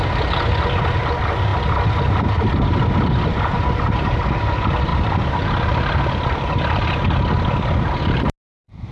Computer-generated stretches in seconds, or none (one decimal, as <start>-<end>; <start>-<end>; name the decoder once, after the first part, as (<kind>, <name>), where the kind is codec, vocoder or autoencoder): 4.9-6.1 (vocoder, BigVGAN v2)